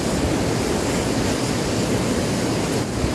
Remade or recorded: recorded